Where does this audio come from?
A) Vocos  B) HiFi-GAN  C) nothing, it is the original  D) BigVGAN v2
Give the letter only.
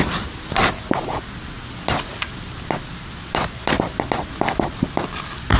C